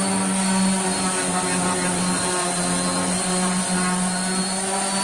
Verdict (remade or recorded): recorded